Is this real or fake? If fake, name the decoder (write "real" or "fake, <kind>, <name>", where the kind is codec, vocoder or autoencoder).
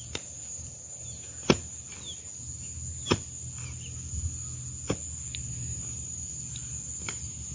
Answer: real